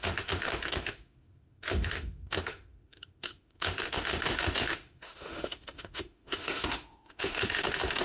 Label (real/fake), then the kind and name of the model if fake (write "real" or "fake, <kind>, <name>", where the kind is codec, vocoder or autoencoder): fake, autoencoder, DAC-VAE